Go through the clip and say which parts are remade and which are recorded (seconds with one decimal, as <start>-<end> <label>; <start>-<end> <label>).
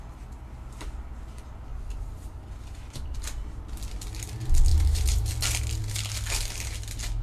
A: 0.0-4.7 recorded; 4.7-5.3 remade; 5.3-7.2 recorded